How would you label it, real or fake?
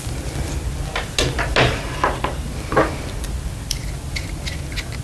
real